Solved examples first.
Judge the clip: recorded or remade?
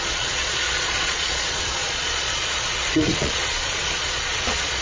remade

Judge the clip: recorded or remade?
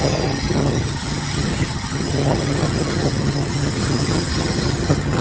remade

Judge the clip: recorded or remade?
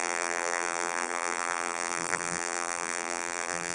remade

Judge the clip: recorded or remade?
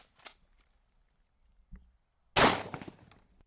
recorded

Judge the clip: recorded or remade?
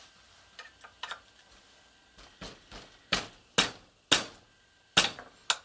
recorded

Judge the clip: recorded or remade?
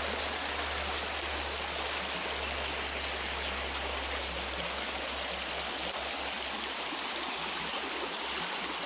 recorded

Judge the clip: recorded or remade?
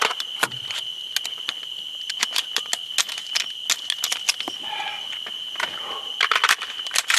recorded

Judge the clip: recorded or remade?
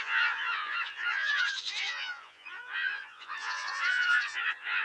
remade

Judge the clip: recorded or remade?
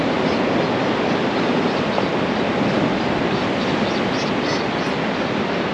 recorded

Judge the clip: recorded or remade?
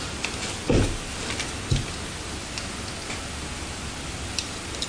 recorded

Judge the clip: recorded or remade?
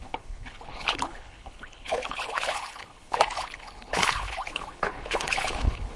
remade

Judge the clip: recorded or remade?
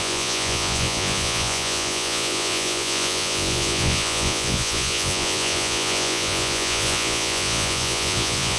remade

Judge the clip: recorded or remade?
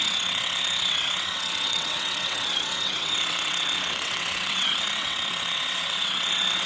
remade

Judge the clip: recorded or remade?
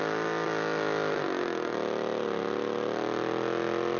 recorded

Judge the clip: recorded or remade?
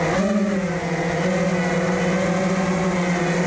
recorded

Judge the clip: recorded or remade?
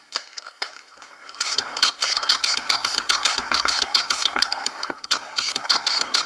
remade